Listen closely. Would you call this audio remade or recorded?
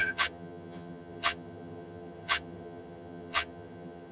remade